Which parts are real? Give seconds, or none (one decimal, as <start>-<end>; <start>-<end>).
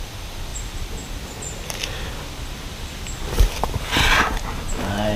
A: 0.0-0.5; 3.6-5.2